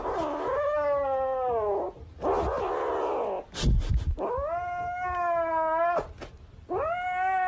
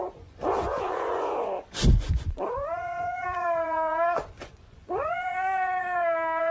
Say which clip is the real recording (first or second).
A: first